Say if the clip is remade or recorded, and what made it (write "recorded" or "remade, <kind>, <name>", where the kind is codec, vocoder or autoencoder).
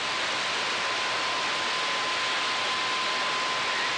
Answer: recorded